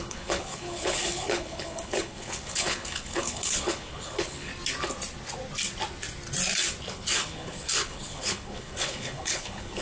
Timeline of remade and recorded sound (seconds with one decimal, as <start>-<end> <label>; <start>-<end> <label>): 0.0-4.5 remade; 4.5-6.9 recorded; 6.9-9.8 remade